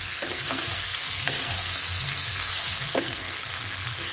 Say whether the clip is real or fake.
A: fake